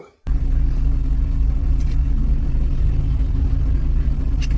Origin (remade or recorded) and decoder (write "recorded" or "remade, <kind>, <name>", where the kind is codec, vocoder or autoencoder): recorded